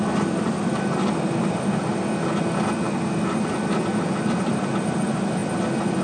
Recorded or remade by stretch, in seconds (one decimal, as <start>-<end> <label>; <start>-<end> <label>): 0.0-1.9 remade; 1.9-4.5 recorded; 4.5-6.0 remade